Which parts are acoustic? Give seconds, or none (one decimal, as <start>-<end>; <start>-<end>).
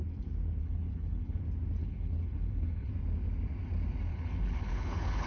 0.0-0.6; 1.4-1.8; 2.9-4.1